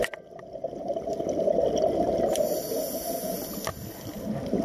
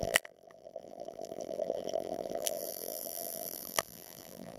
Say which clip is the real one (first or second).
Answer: first